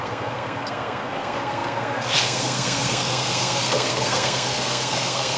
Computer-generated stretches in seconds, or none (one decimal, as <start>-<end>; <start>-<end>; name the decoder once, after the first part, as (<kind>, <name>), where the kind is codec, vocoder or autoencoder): 0.0-5.4 (codec, SNAC)